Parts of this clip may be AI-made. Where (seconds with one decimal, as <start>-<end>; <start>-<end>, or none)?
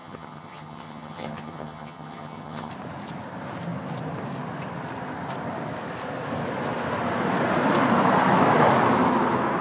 0.0-2.7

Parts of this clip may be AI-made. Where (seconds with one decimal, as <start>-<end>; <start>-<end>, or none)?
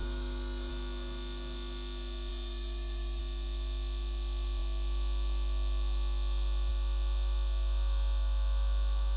0.0-0.7; 2.3-3.2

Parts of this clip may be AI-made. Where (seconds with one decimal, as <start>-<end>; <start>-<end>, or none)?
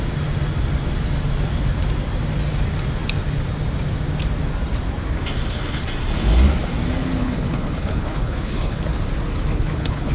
7.2-8.8; 9.5-10.1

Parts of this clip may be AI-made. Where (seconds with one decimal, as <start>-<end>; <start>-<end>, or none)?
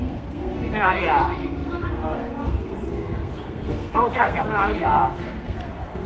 0.0-6.1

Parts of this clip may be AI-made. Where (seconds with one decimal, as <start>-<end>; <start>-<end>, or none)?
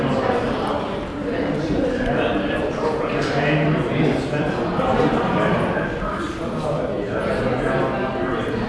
1.1-6.2